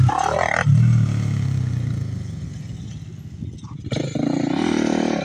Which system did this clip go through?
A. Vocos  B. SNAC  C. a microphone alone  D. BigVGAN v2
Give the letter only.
C